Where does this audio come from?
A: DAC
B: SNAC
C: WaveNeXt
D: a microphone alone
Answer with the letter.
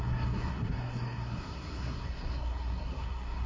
B